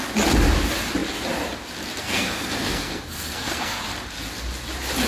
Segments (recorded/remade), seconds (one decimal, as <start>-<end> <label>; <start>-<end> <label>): 0.0-2.0 recorded; 2.0-3.8 remade; 3.8-5.1 recorded